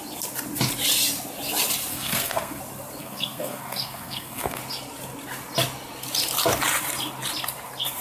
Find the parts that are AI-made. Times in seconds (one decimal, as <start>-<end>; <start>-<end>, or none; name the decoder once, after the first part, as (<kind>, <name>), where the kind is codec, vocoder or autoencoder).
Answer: 1.9-2.6 (codec, SNAC); 3.0-4.6